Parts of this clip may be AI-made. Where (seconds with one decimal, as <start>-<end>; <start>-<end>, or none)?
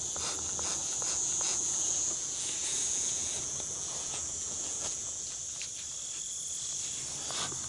0.8-5.4